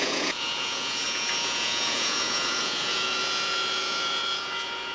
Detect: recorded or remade remade